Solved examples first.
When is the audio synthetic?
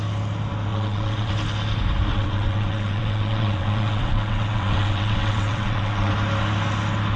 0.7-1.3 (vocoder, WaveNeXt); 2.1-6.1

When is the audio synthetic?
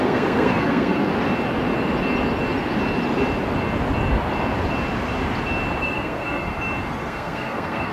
0.0-1.1 (codec, SNAC); 5.8-6.5; 7.0-7.9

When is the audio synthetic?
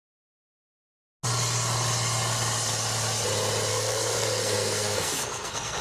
3.7-5.8 (codec, SNAC)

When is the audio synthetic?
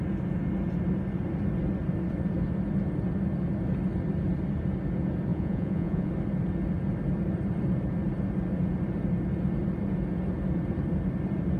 5.3-6.1 (vocoder, Vocos)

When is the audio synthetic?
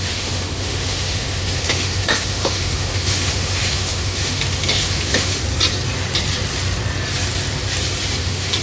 0.0-5.4 (autoencoder, DAC-VAE); 8.2-8.6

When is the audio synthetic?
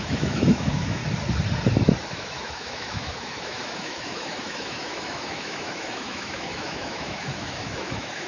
0.0-1.0 (autoencoder, DAC-VAE); 2.1-8.3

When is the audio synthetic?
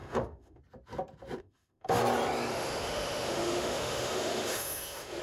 0.0-0.6 (autoencoder, DAC-VAE); 1.4-2.0; 2.5-5.2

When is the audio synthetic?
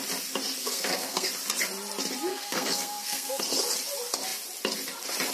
0.6-1.3 (codec, SNAC); 2.3-3.4